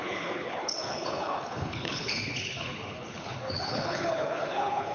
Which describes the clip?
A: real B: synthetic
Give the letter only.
B